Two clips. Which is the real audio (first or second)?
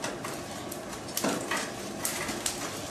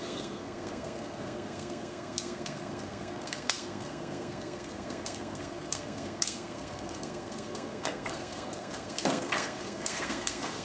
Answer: first